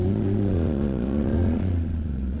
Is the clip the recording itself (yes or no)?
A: no